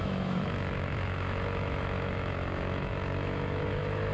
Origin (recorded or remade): remade